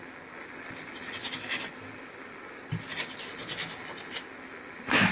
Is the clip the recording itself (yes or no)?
yes